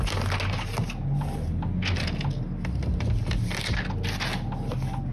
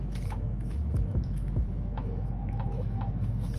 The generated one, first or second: second